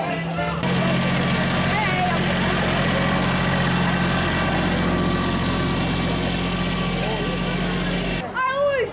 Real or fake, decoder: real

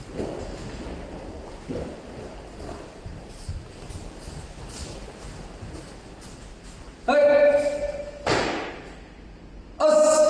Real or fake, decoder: real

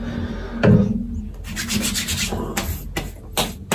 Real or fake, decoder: real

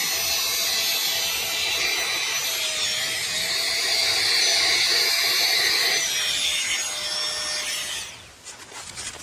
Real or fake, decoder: real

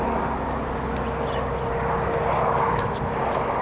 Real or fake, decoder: real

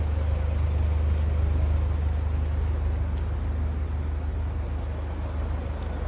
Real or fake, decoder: real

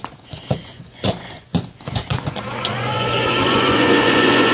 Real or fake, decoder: fake, vocoder, Vocos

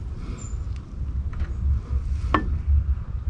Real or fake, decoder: real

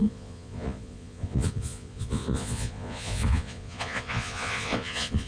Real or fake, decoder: fake, vocoder, Vocos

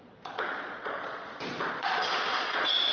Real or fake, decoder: fake, vocoder, Vocos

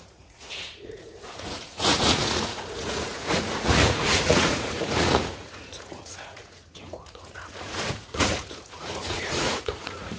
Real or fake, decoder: fake, vocoder, Vocos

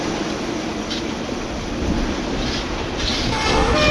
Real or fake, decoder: real